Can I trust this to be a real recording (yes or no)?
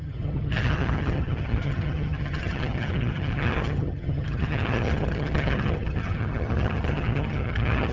no